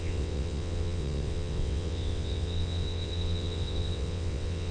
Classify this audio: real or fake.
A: fake